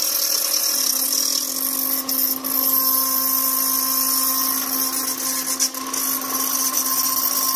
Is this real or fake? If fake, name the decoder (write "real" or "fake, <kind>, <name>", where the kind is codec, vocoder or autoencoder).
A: real